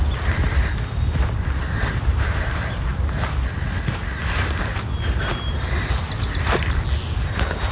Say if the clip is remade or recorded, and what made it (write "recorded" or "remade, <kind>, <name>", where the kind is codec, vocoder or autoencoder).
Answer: recorded